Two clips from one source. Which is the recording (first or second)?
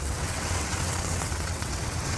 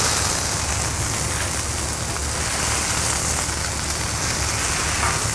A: second